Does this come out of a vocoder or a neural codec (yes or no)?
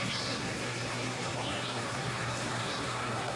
yes